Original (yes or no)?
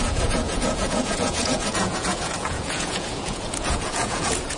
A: no